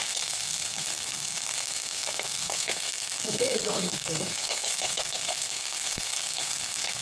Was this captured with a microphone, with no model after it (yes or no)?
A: no